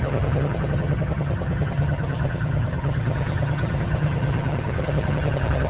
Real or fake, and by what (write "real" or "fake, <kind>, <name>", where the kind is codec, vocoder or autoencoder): fake, vocoder, HiFi-GAN